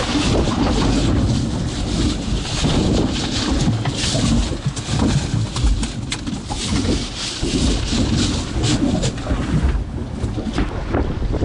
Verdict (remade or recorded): recorded